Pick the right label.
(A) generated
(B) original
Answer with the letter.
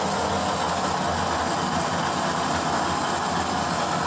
B